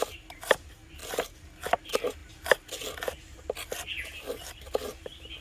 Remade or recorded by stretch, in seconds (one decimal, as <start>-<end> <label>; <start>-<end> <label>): 0.0-5.4 recorded